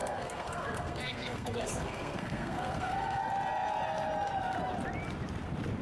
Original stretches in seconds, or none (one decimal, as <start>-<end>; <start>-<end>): 3.2-5.8

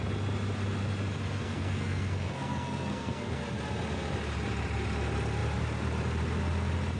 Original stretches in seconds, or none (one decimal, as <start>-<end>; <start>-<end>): 0.0-1.4; 3.4-7.0

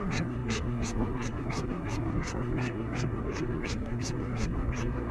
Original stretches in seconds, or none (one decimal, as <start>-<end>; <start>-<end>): none

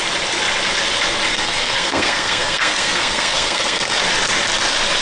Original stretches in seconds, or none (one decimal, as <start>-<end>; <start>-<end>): 0.0-1.3; 4.0-5.0

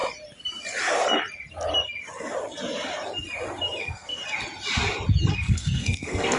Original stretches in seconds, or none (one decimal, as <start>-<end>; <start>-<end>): 0.0-3.8; 4.2-5.3